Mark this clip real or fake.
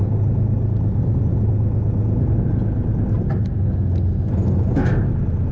real